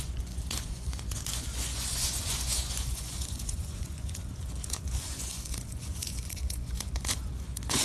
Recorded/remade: remade